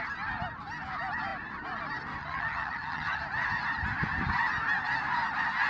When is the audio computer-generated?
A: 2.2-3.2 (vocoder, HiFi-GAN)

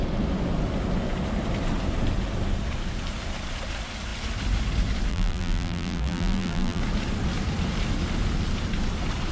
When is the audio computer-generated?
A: 5.1-6.8 (vocoder, BigVGAN v2)

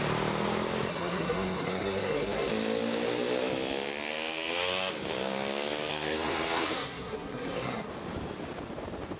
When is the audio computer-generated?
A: 0.9-2.5 (codec, SNAC); 5.9-7.9

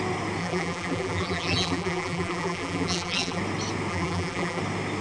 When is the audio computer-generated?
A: 0.4-3.4 (vocoder, BigVGAN v2); 3.9-4.6

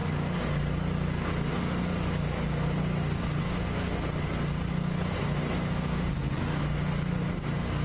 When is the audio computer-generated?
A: none

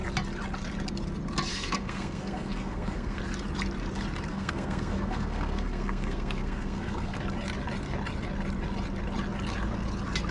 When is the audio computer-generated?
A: 1.5-3.2 (codec, SNAC); 4.3-7.2